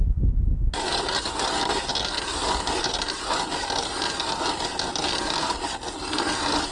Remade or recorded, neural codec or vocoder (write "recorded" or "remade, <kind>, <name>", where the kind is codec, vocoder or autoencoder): recorded